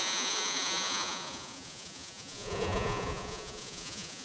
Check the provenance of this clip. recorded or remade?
remade